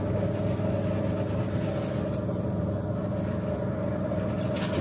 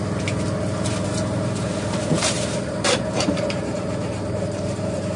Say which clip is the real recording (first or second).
first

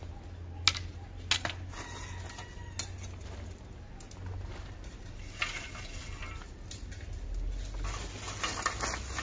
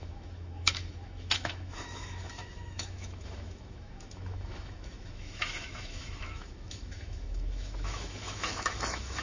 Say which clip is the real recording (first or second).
first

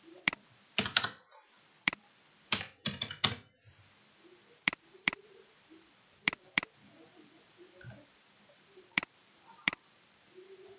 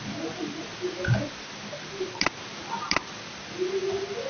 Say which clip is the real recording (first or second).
second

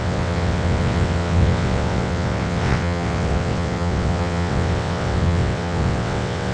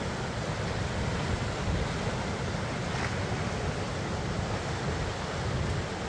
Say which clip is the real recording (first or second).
second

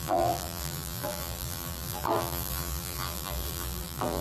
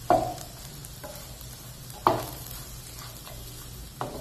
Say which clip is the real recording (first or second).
second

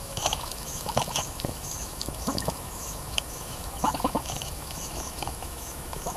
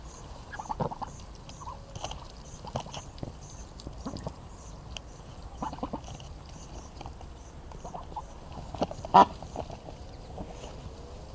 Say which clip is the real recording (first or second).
second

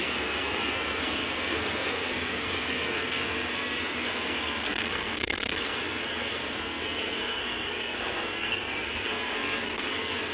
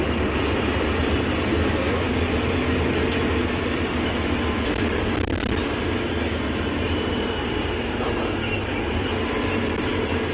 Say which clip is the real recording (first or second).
second